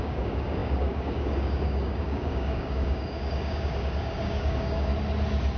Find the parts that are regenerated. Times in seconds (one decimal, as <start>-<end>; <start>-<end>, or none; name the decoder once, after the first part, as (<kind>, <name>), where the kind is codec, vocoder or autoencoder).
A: 0.0-4.9 (codec, DAC)